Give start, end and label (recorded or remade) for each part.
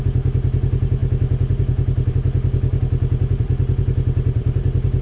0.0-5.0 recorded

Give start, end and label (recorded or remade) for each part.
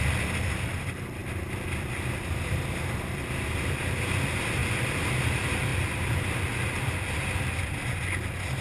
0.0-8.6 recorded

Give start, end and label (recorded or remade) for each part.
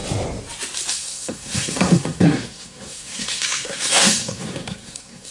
0.0-0.9 recorded; 0.9-5.3 remade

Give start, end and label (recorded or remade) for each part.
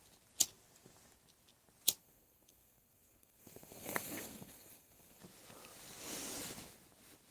0.0-2.0 recorded; 2.0-5.2 remade; 5.2-7.3 recorded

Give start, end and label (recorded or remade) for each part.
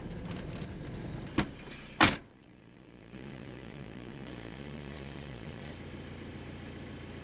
0.0-2.3 recorded; 2.3-5.7 remade; 5.7-7.2 recorded